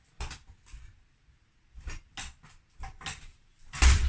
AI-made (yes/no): no